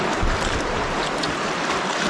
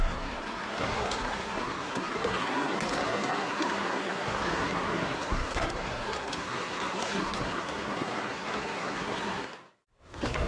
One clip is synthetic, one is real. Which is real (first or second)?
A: first